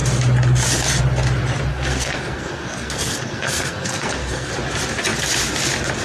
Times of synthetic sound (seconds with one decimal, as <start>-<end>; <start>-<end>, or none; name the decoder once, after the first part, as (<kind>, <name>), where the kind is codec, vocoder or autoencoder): 1.7-4.5 (codec, SNAC)